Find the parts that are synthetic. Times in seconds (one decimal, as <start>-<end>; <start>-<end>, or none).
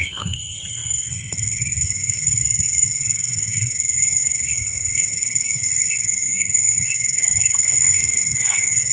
0.0-8.9